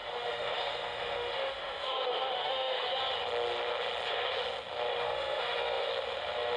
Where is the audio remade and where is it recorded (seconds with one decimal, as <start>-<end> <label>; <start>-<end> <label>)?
0.0-2.9 remade; 2.9-4.9 recorded; 4.9-5.9 remade; 5.9-6.6 recorded